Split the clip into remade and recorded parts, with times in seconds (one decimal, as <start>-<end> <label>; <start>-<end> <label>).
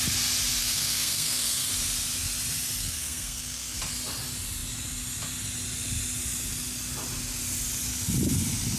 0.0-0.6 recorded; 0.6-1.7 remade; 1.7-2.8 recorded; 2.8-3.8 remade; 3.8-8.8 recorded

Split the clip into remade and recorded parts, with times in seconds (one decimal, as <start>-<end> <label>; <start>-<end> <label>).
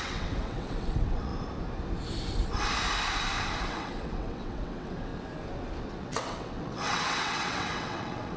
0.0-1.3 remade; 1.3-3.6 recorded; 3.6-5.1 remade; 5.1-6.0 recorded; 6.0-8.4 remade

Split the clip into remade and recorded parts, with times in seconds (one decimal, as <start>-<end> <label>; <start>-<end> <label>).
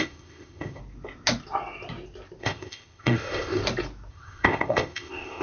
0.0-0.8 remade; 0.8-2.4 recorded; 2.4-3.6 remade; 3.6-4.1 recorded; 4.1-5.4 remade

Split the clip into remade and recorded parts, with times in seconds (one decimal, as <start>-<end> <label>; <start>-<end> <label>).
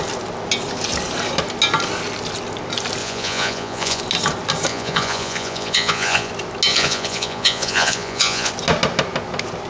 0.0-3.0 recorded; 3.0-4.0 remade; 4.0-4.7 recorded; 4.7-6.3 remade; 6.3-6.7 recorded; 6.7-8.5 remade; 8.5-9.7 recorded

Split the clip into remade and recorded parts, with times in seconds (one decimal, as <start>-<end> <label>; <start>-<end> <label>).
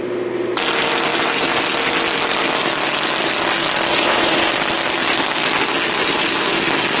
0.0-3.9 recorded; 3.9-4.5 remade; 4.5-7.0 recorded